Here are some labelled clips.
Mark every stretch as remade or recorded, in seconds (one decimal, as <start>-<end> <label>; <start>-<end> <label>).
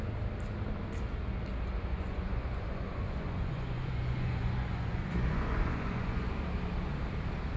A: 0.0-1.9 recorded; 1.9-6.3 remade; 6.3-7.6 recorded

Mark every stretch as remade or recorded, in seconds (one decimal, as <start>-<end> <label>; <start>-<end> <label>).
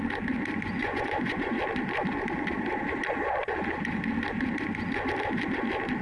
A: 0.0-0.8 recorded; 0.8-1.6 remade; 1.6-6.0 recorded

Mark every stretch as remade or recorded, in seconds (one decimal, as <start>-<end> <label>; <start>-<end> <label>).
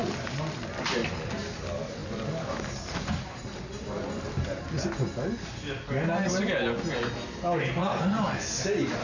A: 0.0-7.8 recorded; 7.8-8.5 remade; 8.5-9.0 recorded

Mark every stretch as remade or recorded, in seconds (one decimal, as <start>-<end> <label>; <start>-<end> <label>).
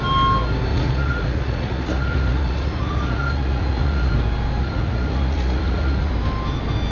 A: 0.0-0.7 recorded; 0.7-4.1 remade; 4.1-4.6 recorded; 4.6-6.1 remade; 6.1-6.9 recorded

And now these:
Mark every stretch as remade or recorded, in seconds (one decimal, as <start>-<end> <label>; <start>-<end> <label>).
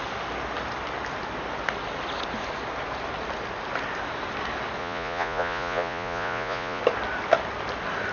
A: 0.0-4.8 recorded; 4.8-6.8 remade; 6.8-8.1 recorded